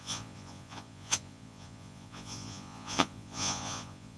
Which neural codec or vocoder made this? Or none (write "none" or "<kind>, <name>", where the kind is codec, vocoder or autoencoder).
vocoder, Vocos